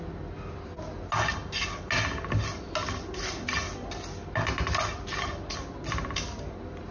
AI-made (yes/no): no